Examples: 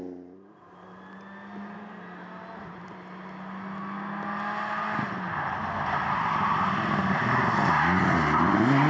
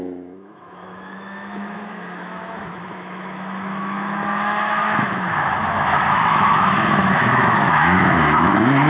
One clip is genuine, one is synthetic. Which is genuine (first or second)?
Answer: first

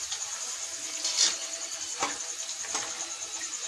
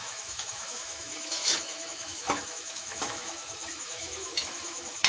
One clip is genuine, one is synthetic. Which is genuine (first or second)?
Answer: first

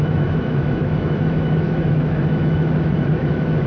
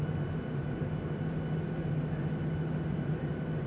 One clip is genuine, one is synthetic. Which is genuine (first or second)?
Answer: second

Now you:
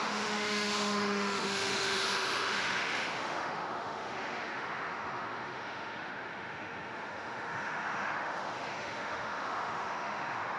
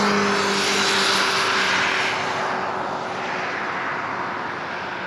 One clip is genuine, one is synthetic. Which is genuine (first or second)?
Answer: second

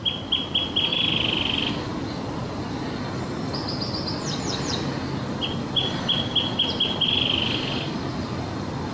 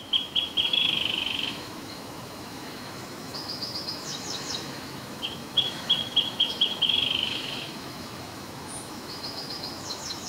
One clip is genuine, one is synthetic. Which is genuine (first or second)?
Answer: first